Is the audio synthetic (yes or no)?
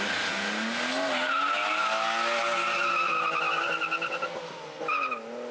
no